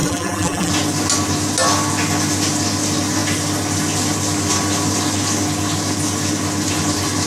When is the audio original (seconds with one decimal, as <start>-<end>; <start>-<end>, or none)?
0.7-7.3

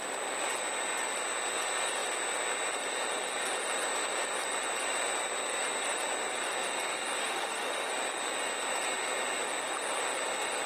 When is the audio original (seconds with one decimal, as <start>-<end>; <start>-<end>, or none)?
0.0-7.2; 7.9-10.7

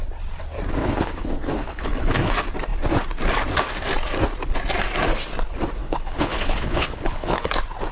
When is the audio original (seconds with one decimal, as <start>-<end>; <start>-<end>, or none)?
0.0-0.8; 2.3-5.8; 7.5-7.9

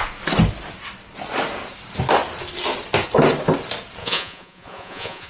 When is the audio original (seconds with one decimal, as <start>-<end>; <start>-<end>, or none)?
0.0-4.0

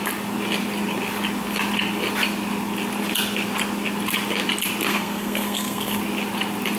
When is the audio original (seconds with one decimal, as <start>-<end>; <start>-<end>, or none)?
0.0-4.9; 6.0-6.8

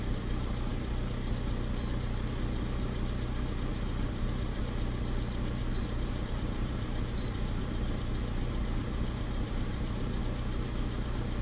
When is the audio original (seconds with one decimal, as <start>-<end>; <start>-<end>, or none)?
0.0-3.7; 4.6-5.7; 10.2-11.4